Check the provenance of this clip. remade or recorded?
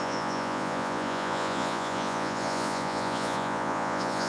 remade